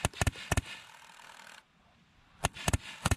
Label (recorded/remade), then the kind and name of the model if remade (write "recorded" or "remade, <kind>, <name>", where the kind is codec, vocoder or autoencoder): recorded